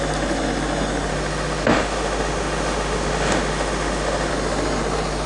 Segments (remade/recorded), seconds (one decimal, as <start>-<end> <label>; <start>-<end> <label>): 0.0-1.1 recorded; 1.1-4.3 remade; 4.3-5.3 recorded